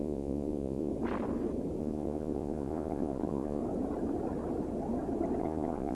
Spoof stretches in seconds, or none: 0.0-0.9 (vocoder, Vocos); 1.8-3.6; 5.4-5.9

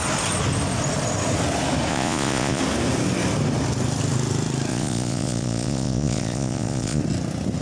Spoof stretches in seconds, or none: 1.9-2.6 (vocoder, Vocos); 4.7-7.0

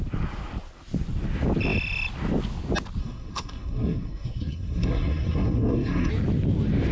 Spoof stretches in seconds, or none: 3.0-6.1 (codec, SNAC)

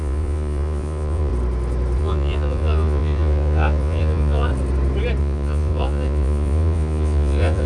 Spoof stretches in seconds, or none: 0.0-1.3 (vocoder, Vocos); 2.0-4.5; 5.2-7.7

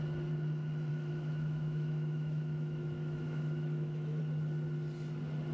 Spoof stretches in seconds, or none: 0.9-4.2 (autoencoder, DAC-VAE)

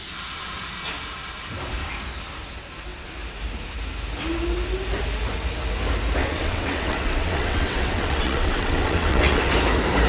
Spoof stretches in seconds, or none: 6.2-9.5 (vocoder, WaveNeXt)

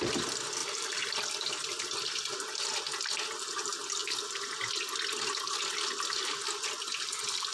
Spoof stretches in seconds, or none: none

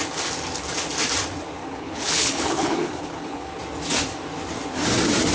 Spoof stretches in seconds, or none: 1.6-3.6 (codec, HILCodec)